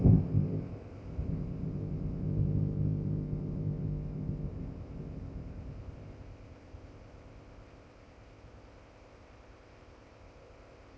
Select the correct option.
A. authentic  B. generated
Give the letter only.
B